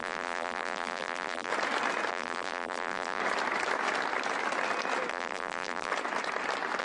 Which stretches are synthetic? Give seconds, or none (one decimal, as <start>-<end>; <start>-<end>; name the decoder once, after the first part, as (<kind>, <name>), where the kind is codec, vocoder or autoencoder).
0.0-1.5 (vocoder, BigVGAN v2); 2.1-3.2; 5.1-5.9